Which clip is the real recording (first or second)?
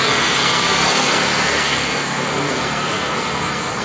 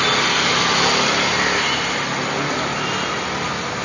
second